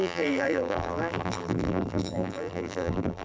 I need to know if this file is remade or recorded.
remade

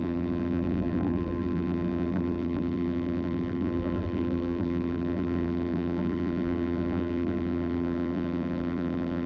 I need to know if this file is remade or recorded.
remade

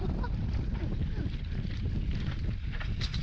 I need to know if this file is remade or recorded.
remade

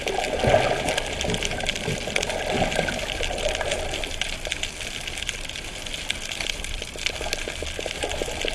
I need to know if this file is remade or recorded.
recorded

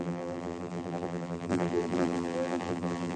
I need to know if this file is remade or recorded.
remade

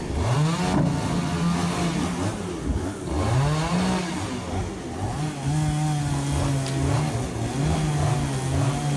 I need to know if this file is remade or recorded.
recorded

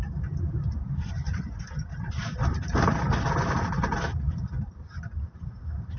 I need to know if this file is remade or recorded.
remade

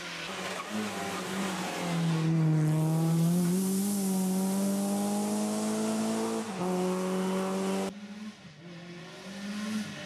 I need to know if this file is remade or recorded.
recorded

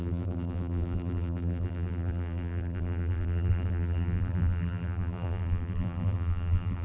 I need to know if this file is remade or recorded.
remade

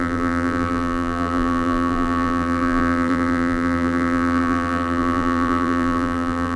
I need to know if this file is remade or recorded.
remade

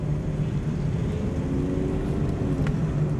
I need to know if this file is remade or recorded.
recorded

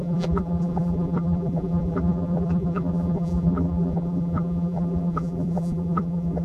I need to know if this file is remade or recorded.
remade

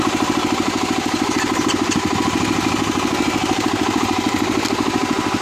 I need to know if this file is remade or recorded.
remade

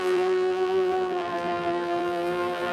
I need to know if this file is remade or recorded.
remade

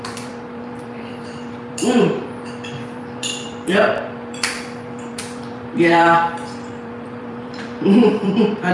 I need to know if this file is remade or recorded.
remade